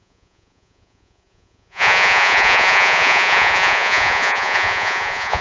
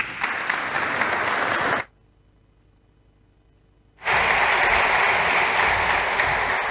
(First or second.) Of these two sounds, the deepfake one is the first